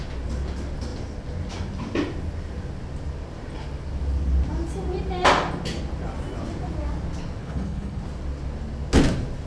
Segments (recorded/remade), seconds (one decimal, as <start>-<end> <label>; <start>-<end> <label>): 0.0-7.4 recorded; 7.4-8.0 remade; 8.0-9.5 recorded